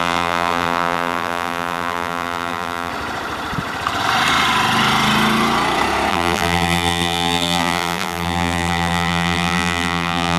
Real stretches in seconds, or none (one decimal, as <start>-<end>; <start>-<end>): 2.9-6.1